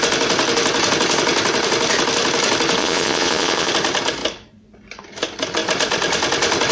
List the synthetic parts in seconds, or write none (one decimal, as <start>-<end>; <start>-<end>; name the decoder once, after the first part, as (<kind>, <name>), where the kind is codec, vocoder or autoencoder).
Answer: 2.8-3.7 (vocoder, Vocos)